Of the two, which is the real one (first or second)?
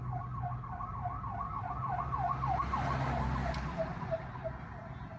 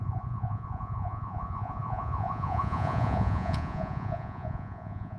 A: first